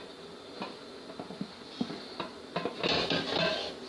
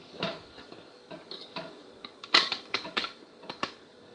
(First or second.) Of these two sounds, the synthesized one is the second